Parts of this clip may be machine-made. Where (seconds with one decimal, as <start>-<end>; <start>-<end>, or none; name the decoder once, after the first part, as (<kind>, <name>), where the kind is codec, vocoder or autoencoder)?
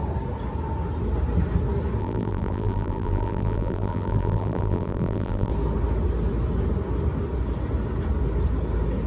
2.0-5.5 (vocoder, BigVGAN v2)